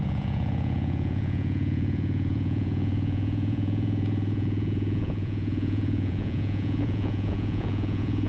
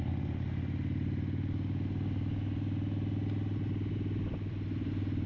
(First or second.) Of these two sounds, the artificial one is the first